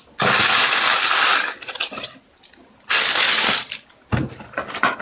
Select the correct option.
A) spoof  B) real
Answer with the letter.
B